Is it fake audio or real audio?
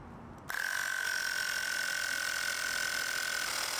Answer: real